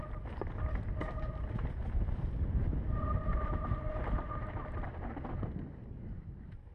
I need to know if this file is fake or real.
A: real